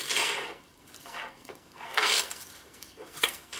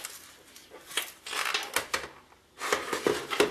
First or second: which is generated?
first